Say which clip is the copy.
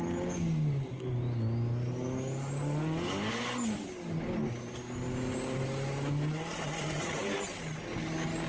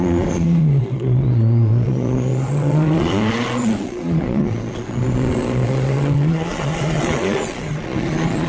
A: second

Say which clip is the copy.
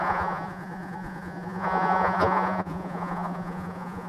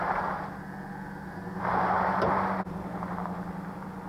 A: first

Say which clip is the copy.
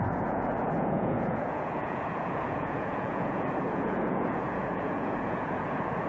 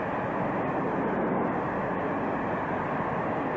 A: first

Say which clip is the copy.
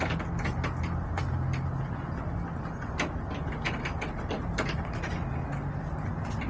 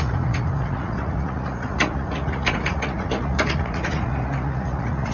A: second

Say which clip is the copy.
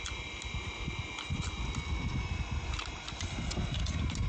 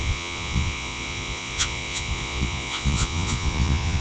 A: second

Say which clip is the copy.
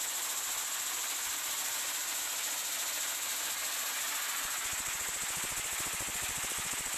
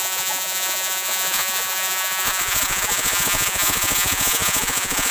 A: second